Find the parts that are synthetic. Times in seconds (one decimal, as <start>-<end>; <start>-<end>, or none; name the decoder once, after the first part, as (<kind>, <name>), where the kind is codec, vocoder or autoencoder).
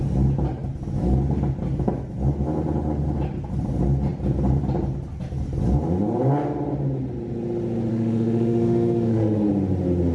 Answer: 7.9-9.5 (autoencoder, DAC-VAE)